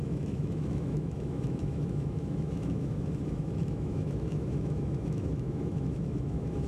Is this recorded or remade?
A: remade